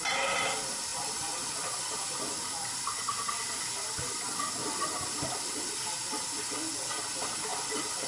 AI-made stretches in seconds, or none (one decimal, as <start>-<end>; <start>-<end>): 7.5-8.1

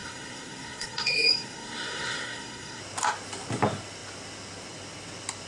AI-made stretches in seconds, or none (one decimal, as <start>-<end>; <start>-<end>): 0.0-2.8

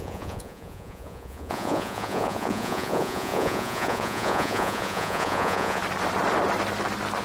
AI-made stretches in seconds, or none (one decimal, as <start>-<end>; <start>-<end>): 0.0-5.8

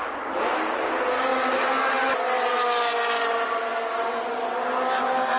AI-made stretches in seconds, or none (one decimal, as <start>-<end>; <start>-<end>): none